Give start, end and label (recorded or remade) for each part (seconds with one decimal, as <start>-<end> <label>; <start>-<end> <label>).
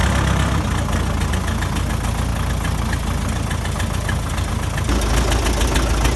0.0-6.2 recorded